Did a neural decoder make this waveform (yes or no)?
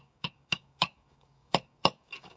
yes